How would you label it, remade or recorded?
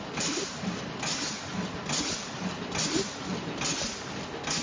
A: recorded